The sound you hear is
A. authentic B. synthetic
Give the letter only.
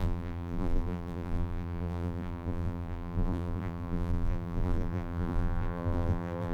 B